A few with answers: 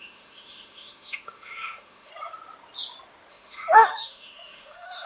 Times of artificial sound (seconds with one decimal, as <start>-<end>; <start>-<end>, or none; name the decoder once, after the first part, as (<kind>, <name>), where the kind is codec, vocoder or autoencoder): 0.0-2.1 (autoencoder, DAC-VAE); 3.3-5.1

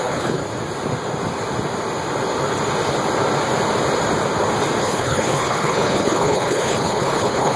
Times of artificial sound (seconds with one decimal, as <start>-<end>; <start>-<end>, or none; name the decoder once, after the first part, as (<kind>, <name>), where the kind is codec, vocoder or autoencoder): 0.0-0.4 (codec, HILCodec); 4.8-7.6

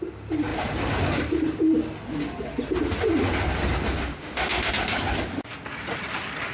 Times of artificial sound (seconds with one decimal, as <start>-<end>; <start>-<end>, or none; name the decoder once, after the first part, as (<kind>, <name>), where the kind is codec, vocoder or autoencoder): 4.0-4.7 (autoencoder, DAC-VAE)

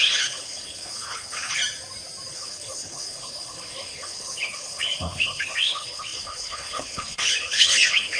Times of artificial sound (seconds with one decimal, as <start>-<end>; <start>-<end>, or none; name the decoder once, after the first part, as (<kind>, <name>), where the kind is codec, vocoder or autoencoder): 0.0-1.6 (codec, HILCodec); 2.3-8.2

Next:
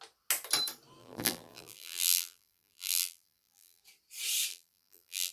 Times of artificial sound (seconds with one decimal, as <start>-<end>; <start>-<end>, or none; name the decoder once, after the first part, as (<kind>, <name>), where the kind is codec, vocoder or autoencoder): 1.0-3.8 (vocoder, BigVGAN v2); 4.5-5.3